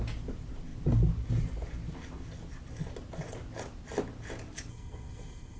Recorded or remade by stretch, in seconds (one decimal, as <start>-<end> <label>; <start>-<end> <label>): 0.0-4.7 recorded; 4.7-5.6 remade